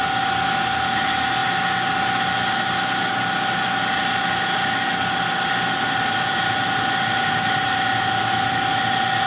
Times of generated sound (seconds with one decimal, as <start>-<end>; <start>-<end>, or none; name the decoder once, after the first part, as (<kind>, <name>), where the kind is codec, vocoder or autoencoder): none